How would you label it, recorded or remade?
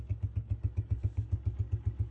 remade